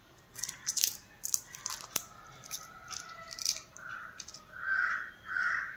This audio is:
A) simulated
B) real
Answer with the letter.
A